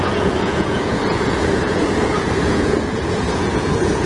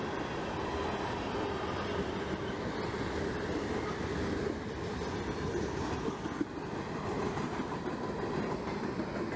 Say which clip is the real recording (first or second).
second